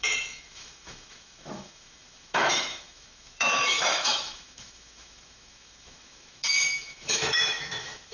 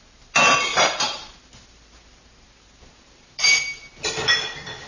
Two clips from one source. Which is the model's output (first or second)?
first